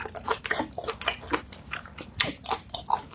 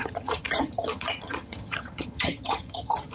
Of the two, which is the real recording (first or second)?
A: first